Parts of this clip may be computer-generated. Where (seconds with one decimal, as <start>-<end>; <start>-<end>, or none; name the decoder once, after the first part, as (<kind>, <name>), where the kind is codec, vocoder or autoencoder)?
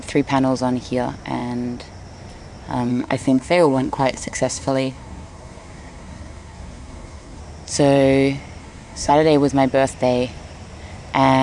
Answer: 2.9-7.4 (codec, SNAC); 8.6-9.1